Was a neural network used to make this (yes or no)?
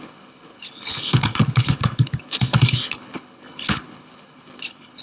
yes